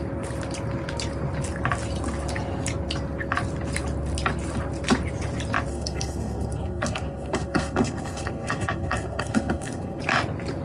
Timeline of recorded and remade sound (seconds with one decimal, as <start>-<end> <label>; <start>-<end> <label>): 0.0-5.7 recorded; 5.7-10.0 remade; 10.0-10.6 recorded